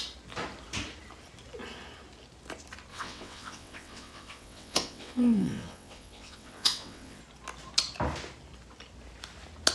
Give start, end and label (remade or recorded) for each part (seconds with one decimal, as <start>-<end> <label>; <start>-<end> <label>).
0.0-2.9 recorded; 2.9-7.2 remade; 7.2-9.7 recorded